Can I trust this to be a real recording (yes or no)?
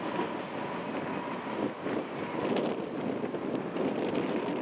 yes